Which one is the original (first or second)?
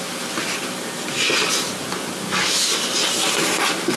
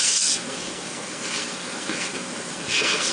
first